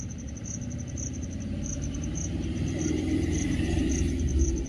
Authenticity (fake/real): fake